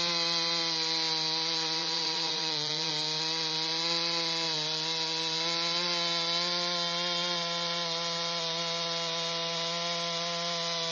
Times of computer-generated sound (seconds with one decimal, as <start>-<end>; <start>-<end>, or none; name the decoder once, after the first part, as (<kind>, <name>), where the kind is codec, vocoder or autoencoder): 1.8-2.9 (vocoder, Vocos)